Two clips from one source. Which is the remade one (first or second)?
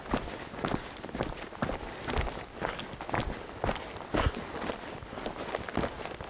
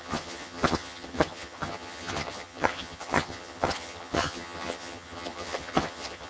second